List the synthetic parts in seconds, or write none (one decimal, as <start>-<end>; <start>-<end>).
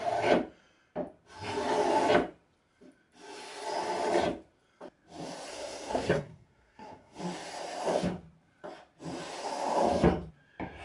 5.5-7.2